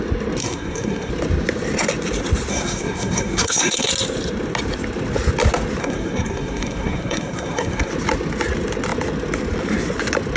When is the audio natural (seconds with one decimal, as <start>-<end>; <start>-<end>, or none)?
0.0-0.4; 1.1-2.5; 3.9-5.8; 7.9-10.4